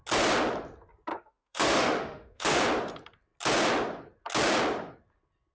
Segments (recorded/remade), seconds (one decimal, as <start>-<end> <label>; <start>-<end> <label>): 0.0-1.1 recorded; 1.1-2.6 remade; 2.6-5.5 recorded